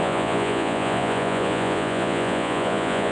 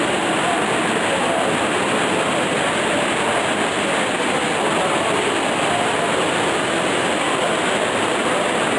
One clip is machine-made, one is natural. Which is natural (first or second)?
second